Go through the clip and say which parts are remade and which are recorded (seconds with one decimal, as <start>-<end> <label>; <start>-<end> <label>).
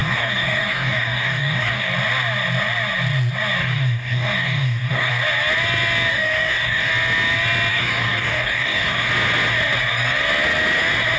0.0-1.9 remade; 1.9-3.6 recorded; 3.6-5.1 remade; 5.1-6.1 recorded; 6.1-6.9 remade; 6.9-7.7 recorded; 7.7-9.1 remade; 9.1-11.2 recorded